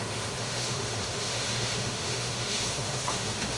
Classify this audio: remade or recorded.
remade